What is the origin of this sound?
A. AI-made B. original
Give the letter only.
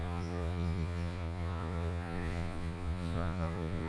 A